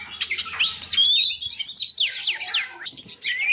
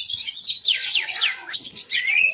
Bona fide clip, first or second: first